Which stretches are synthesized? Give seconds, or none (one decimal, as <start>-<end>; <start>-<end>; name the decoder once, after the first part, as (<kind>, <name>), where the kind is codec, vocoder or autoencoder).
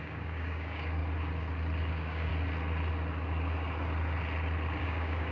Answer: 0.0-1.0 (codec, DAC); 1.9-2.3; 4.8-5.3